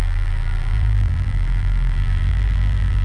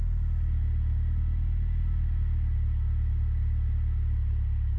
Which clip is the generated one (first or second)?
first